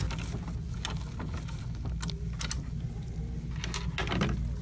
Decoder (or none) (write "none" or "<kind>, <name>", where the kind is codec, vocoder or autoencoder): none